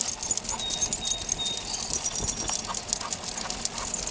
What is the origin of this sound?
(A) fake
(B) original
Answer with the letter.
B